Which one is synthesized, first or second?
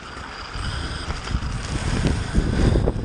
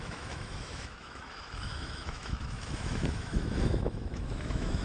second